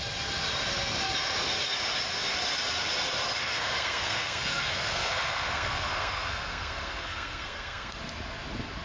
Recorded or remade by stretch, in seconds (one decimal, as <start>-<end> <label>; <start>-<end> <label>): 0.0-3.4 recorded; 3.4-8.0 remade; 8.0-8.8 recorded